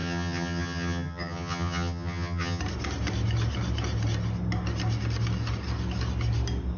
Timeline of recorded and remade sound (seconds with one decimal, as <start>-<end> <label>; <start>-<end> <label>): 0.0-2.6 remade; 2.6-6.8 recorded